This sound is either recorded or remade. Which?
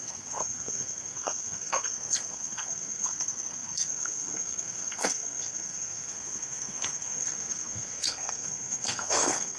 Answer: remade